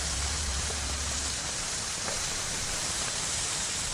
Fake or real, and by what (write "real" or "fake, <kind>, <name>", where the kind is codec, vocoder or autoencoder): fake, vocoder, BigVGAN v2